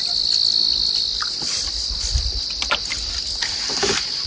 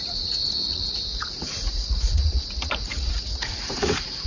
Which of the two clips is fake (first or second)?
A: second